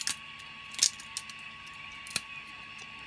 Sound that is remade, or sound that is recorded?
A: recorded